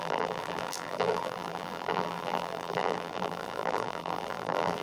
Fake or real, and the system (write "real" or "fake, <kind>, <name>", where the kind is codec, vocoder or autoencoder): fake, vocoder, BigVGAN v2